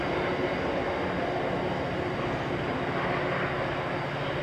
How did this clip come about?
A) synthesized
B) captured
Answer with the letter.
B